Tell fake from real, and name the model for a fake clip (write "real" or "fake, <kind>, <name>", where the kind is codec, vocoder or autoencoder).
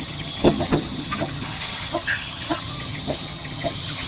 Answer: fake, vocoder, HiFi-GAN